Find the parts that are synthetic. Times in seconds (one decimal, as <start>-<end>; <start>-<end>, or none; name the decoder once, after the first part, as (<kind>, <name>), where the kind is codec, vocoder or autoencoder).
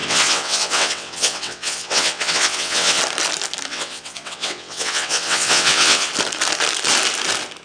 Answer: 0.0-3.0 (vocoder, WaveNeXt); 3.7-6.1